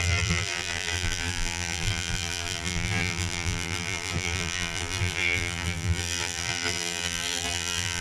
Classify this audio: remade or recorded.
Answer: remade